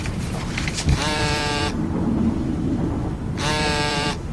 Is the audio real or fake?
fake